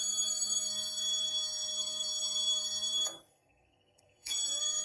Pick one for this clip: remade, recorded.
remade